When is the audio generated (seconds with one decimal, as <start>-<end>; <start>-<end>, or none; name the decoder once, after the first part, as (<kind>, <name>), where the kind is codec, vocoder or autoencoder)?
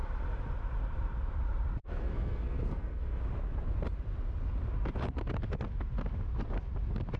1.8-3.2 (codec, SNAC)